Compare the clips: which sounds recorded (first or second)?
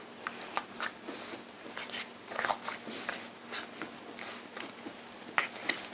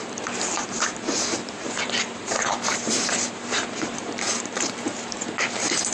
first